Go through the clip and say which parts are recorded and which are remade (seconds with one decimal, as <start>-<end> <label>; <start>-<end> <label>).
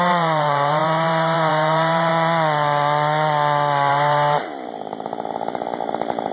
0.0-2.1 remade; 2.1-3.9 recorded; 3.9-6.3 remade